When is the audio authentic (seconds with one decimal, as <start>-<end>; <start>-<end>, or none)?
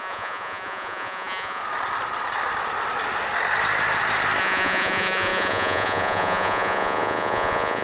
1.6-4.4